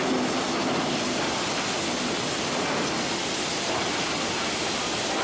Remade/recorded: recorded